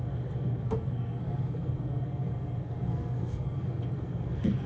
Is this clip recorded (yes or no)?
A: no